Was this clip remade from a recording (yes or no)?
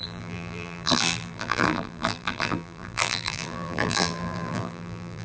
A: yes